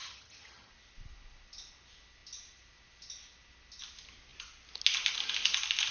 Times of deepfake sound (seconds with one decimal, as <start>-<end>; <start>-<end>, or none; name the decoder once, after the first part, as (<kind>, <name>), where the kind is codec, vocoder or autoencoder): 0.0-0.7 (vocoder, HiFi-GAN)